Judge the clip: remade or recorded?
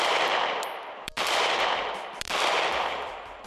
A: remade